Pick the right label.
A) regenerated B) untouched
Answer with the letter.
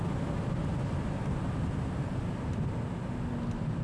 B